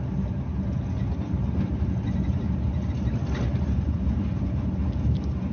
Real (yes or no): yes